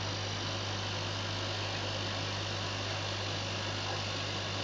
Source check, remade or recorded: recorded